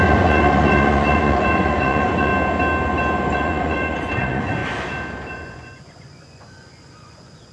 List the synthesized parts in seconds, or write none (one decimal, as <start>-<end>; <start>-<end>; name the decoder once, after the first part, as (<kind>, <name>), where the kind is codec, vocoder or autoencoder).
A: 0.0-2.3 (vocoder, Vocos); 3.3-4.6; 5.3-7.5